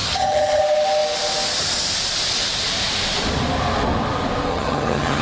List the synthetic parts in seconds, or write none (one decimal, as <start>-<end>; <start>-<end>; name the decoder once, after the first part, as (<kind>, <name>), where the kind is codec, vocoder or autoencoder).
0.0-0.6 (vocoder, HiFi-GAN); 4.5-5.2